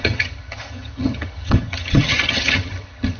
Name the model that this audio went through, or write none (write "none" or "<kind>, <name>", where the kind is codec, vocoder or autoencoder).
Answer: vocoder, HiFi-GAN